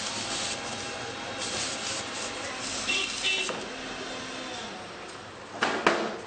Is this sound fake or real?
real